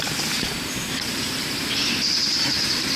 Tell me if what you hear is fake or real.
fake